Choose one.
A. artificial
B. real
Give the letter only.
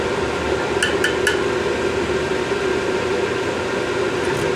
B